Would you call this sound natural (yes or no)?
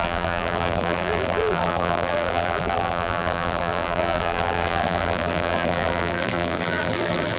no